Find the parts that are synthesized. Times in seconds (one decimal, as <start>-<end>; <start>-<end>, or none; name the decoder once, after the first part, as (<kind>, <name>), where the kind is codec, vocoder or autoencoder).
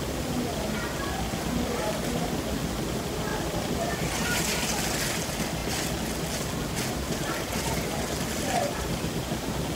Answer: 3.3-4.4 (vocoder, BigVGAN v2)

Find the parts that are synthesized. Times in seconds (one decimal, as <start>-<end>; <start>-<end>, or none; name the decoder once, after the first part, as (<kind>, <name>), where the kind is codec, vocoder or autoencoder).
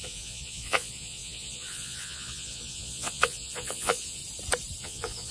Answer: 0.0-4.2 (vocoder, Vocos); 4.8-5.3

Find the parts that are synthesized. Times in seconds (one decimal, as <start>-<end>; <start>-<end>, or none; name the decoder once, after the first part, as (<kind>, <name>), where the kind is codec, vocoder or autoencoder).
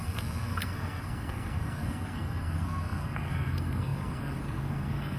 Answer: 0.0-5.2 (codec, SNAC)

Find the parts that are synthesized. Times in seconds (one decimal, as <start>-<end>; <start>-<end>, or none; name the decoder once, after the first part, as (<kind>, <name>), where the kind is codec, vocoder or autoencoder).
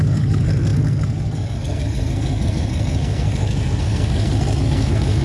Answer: 0.0-5.2 (codec, SNAC)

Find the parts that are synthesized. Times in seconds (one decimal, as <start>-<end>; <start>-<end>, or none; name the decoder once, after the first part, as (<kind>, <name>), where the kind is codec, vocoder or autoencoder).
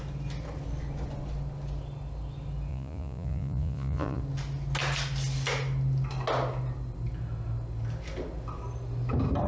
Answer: 2.7-4.2 (vocoder, Vocos)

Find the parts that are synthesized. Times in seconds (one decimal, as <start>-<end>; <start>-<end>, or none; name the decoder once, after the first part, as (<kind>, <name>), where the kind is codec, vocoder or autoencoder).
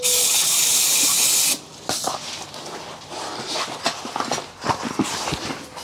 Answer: none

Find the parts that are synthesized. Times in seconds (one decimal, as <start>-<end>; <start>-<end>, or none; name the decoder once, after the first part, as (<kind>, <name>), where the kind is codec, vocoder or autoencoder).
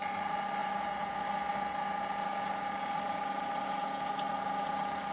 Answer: 0.6-1.1 (vocoder, BigVGAN v2)